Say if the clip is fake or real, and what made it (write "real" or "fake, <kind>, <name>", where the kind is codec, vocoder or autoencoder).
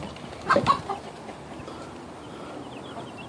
real